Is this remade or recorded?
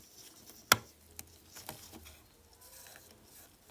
recorded